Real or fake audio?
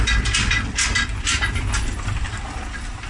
real